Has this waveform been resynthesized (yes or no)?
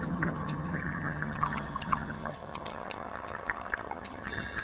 yes